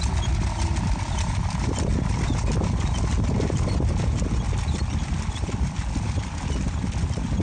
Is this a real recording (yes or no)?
yes